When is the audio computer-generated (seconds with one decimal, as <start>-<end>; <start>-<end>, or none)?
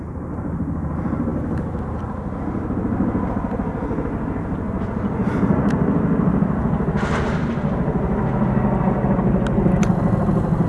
none